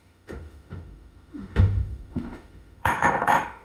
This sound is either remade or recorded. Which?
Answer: remade